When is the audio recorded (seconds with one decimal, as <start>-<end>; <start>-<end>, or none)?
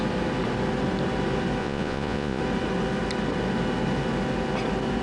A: 0.0-1.6; 2.4-5.0